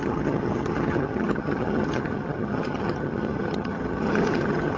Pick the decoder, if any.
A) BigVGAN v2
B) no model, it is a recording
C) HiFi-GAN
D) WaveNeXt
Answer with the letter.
C